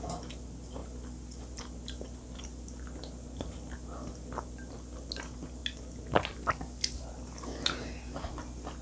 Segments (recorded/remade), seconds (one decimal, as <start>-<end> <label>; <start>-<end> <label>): 0.0-8.8 recorded